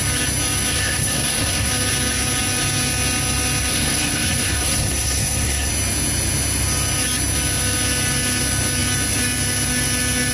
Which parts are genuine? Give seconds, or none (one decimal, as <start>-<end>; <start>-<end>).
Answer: 0.0-0.7; 1.7-3.7; 5.7-10.3